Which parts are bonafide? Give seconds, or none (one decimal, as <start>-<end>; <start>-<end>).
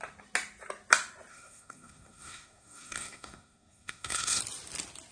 0.0-1.3; 4.4-5.1